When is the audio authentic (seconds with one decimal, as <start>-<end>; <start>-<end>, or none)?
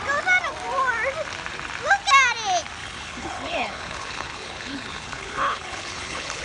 0.0-2.8